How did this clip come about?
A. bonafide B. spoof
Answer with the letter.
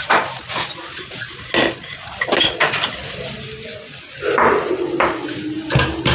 A